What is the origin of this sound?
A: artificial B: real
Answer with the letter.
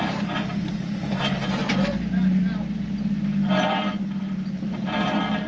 B